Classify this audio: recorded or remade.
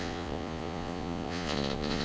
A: remade